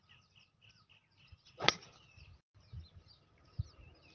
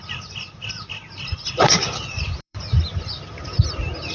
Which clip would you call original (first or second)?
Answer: first